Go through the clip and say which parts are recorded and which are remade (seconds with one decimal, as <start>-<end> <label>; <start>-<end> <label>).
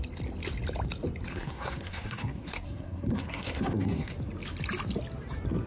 0.0-1.3 recorded; 1.3-4.1 remade; 4.1-5.7 recorded